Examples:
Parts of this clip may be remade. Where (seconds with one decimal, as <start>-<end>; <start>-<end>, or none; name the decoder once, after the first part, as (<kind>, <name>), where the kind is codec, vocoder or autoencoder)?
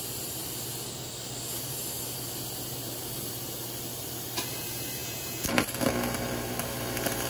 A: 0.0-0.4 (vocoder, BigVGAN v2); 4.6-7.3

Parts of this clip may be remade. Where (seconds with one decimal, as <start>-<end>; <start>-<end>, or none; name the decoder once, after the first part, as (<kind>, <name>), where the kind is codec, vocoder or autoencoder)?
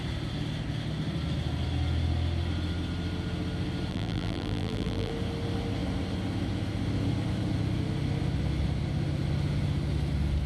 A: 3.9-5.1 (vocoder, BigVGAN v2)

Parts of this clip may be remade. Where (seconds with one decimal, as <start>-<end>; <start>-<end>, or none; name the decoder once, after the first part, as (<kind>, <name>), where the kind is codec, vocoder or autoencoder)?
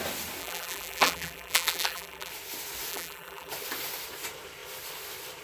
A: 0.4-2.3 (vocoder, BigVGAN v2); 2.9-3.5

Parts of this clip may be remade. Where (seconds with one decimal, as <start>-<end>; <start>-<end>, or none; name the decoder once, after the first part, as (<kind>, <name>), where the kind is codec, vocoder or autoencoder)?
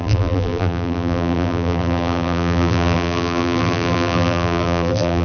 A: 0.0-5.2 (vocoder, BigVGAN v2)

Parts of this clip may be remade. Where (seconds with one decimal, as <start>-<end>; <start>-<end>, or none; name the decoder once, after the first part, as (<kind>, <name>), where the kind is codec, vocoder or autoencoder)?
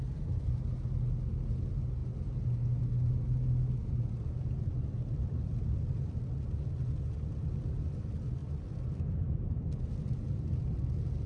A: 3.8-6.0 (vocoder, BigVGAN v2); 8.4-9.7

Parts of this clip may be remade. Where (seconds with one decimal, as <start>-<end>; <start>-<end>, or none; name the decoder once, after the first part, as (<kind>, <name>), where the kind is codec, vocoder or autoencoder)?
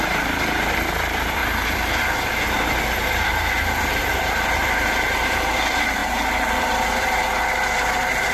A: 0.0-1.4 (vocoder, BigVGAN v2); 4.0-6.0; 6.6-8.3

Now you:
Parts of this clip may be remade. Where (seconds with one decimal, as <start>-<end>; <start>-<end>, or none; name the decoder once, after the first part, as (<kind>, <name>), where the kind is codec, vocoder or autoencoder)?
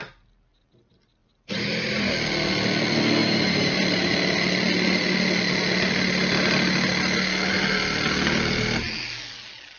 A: 1.2-2.1 (vocoder, BigVGAN v2); 3.2-4.1